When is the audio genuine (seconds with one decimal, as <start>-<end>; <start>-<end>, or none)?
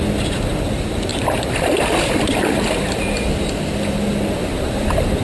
0.0-1.1; 3.0-4.5